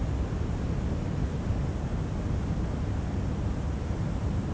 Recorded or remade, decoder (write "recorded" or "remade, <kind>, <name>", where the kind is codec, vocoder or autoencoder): recorded